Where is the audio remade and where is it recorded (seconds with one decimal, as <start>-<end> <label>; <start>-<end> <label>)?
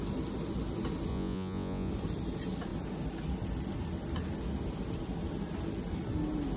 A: 0.0-1.1 recorded; 1.1-1.9 remade; 1.9-6.6 recorded